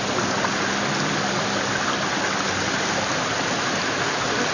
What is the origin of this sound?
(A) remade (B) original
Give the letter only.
B